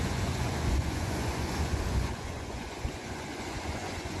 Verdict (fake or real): fake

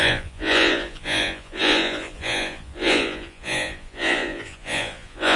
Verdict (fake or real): fake